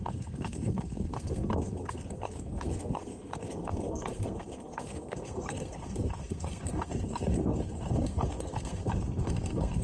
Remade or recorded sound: remade